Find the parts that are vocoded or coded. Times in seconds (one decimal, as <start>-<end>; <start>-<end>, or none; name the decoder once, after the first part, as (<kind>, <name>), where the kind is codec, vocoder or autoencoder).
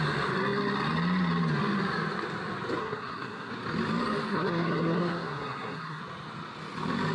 2.8-3.5 (codec, SNAC); 4.3-6.0